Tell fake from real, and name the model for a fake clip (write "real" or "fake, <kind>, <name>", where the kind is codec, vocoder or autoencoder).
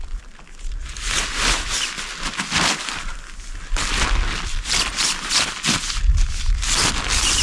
real